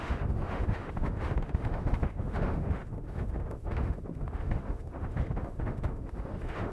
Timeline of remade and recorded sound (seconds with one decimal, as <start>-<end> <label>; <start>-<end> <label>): 0.0-6.7 remade